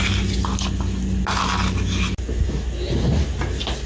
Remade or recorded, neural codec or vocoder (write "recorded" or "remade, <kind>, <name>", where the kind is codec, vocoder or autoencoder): recorded